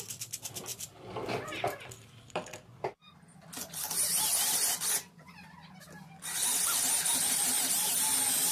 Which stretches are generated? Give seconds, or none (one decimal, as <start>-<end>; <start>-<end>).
none